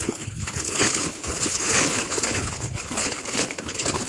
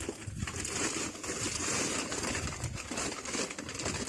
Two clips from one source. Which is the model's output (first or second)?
first